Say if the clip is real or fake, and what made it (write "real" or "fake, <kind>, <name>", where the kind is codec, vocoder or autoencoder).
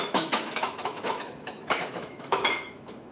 fake, autoencoder, DAC-VAE